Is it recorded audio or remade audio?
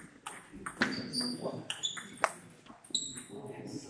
recorded